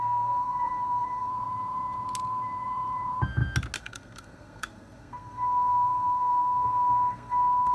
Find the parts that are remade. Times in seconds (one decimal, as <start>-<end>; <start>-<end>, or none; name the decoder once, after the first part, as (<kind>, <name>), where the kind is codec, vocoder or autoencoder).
0.0-1.3 (codec, SNAC); 3.8-7.7